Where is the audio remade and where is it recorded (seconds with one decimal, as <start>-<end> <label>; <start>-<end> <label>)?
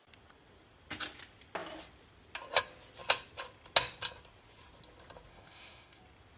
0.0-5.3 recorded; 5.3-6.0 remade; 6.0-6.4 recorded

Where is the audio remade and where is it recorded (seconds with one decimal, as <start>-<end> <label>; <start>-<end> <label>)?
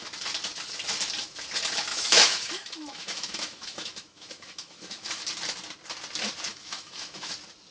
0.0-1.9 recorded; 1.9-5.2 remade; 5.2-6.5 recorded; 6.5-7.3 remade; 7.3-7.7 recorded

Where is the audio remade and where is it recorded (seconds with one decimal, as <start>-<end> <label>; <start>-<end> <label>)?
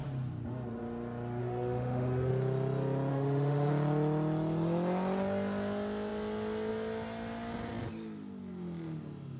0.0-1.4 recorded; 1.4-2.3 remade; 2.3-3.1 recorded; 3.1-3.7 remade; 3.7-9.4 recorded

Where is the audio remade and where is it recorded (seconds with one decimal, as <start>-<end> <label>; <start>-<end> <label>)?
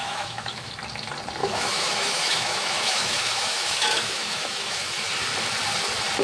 0.0-0.7 remade; 0.7-1.4 recorded; 1.4-5.1 remade; 5.1-6.2 recorded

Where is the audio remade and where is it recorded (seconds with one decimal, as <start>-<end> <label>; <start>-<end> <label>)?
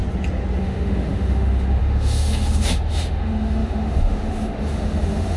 0.0-0.6 recorded; 0.6-5.4 remade